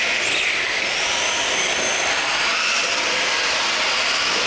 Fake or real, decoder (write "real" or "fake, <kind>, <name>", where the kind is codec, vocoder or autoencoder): real